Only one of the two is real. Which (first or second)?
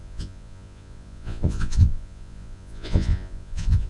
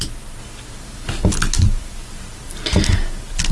second